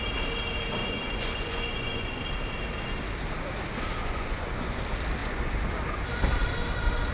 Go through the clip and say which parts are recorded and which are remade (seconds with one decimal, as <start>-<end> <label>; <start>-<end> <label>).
0.0-0.8 recorded; 0.8-2.2 remade; 2.2-4.0 recorded; 4.0-4.8 remade; 4.8-5.2 recorded; 5.2-5.8 remade; 5.8-7.1 recorded